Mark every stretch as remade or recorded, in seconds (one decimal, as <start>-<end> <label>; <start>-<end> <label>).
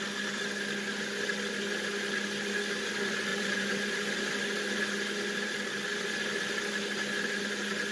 0.0-3.3 recorded; 3.3-4.3 remade; 4.3-7.9 recorded